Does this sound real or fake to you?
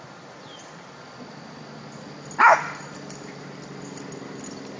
real